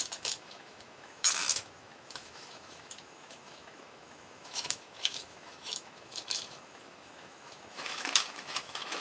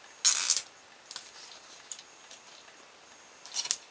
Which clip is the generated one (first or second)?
first